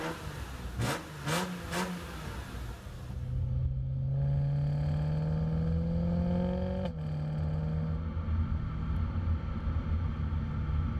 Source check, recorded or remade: recorded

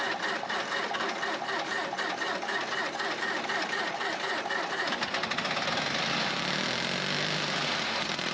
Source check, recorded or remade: recorded